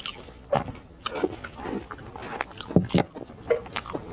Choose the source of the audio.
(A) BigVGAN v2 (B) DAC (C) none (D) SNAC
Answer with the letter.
C